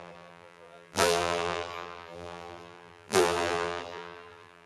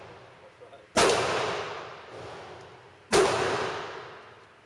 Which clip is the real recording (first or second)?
second